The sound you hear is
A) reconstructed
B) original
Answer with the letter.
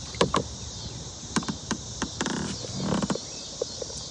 B